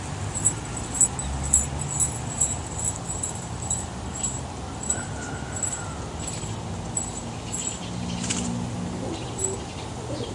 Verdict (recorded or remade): recorded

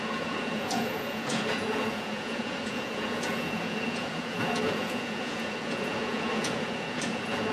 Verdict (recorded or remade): remade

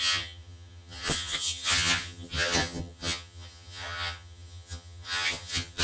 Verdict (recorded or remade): remade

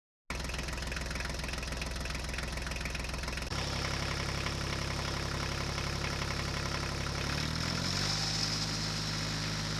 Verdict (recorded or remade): recorded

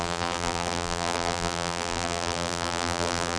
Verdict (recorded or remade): remade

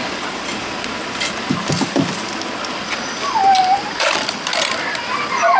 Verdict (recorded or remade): recorded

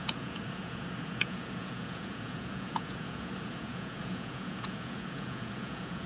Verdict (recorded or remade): remade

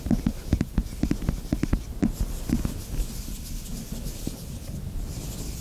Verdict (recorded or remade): recorded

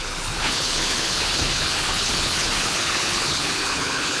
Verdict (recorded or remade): remade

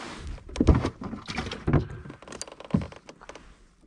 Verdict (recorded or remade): recorded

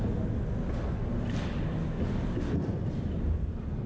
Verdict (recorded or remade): recorded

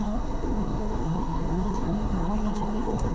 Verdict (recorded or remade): remade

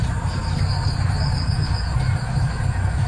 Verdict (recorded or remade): recorded